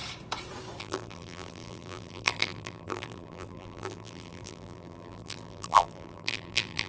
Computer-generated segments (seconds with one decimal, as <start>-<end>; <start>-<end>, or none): 0.8-6.9